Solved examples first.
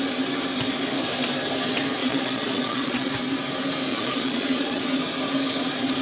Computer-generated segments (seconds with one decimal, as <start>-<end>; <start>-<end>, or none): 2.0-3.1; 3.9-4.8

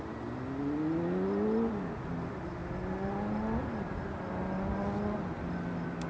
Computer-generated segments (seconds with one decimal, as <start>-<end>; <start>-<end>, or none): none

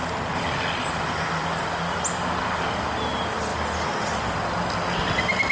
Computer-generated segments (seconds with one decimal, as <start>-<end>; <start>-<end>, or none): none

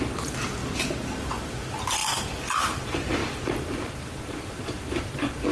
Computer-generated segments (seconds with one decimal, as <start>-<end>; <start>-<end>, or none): 0.0-0.6; 1.3-2.0; 2.6-5.5